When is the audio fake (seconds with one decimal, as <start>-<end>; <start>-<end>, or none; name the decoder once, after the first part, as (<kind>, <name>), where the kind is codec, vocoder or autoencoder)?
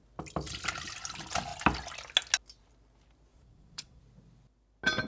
3.3-4.0 (vocoder, Vocos)